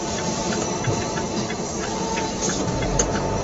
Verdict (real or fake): fake